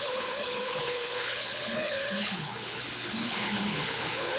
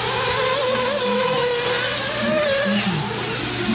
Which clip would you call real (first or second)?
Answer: second